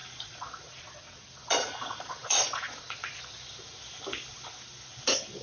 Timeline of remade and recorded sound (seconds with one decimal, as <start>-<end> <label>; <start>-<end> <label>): 0.0-3.2 remade; 3.2-5.4 recorded